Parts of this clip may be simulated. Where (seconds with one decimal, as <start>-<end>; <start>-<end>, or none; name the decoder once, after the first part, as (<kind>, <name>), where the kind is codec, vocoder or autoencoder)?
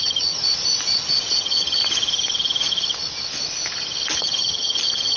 0.0-0.4 (vocoder, HiFi-GAN); 1.4-1.8; 4.2-5.2